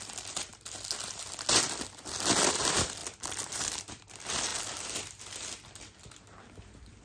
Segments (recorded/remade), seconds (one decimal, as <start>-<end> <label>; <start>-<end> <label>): 0.0-3.0 recorded; 3.0-3.7 remade; 3.7-7.0 recorded